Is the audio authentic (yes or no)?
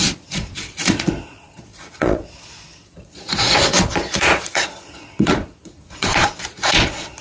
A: no